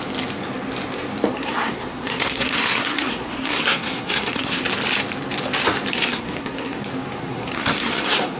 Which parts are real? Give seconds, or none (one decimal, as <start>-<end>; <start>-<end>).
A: 0.0-1.3; 4.6-5.9; 6.8-7.2